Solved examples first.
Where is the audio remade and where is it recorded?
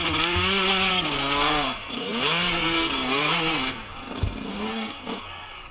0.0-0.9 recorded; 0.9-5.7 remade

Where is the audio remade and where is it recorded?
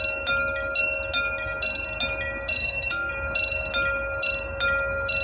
0.0-2.6 recorded; 2.6-3.1 remade; 3.1-5.2 recorded